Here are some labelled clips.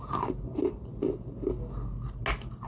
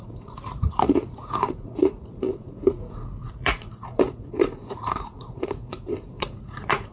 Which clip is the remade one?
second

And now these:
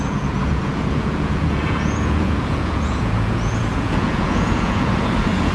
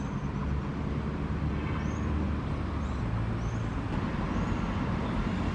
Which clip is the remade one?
first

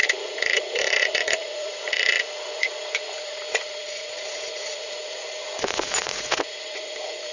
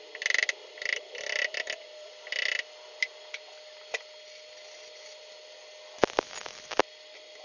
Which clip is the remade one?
first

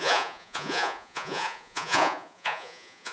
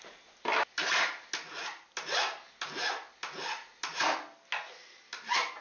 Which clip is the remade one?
first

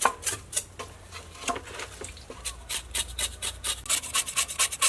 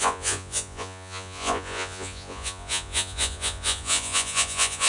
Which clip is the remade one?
second